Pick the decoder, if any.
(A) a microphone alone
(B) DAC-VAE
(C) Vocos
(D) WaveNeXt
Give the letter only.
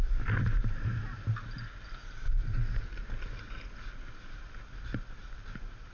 A